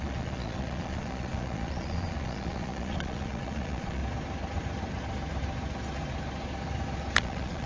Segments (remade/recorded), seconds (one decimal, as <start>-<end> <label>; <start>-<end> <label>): 0.0-4.0 remade; 4.0-7.2 recorded; 7.2-7.7 remade